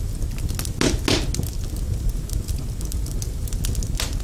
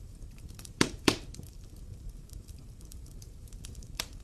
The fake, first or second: second